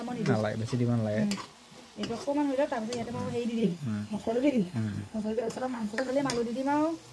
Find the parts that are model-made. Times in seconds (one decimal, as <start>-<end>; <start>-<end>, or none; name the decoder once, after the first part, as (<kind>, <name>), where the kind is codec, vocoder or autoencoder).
3.6-6.1 (codec, SNAC)